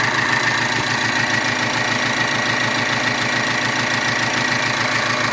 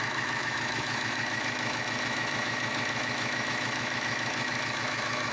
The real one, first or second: first